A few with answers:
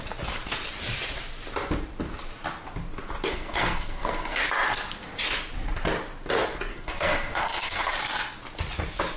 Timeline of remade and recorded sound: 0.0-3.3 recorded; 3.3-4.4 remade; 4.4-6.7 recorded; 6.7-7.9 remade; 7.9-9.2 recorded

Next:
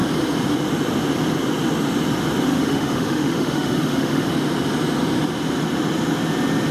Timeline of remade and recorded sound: 0.0-2.5 recorded; 2.5-4.3 remade; 4.3-6.7 recorded

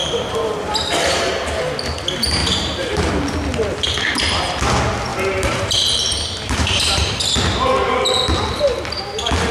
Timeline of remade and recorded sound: 0.0-1.2 remade; 1.2-2.4 recorded; 2.4-3.1 remade; 3.1-5.1 recorded; 5.1-7.2 remade; 7.2-9.5 recorded